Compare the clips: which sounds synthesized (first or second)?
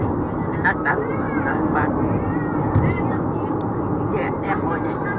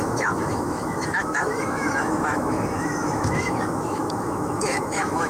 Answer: second